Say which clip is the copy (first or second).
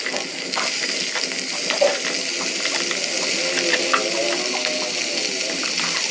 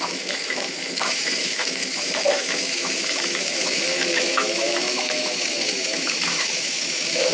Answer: second